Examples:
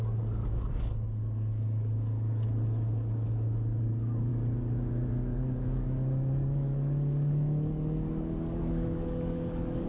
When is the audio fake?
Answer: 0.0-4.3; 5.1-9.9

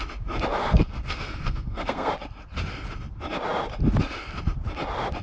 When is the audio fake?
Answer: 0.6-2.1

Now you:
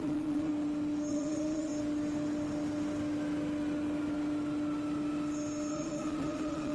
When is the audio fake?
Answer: 0.0-0.5; 1.1-1.7; 5.7-6.7

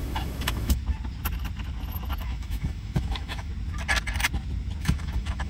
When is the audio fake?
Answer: 0.0-0.8; 2.2-3.5; 4.8-5.5

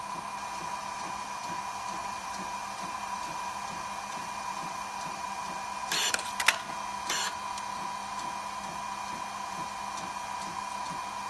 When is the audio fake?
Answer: 2.0-5.5

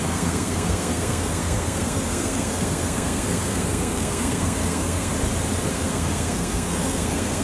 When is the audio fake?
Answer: 0.0-5.1; 5.7-7.4